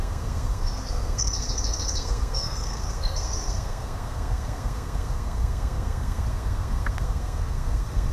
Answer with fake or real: fake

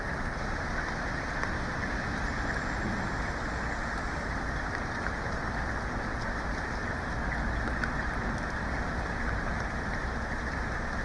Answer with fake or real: real